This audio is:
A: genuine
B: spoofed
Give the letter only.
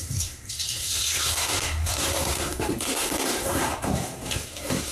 B